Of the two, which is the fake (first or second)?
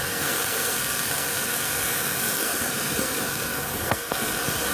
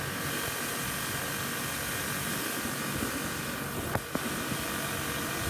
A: first